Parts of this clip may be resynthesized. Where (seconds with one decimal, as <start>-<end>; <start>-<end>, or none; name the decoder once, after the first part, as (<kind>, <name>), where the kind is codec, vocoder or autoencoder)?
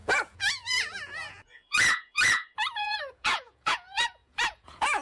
0.0-5.0 (vocoder, Vocos)